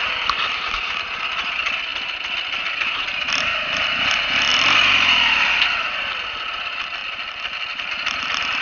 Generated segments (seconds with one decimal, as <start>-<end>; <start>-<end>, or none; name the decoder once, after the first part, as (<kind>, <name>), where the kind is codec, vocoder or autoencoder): 7.0-7.9 (vocoder, BigVGAN v2)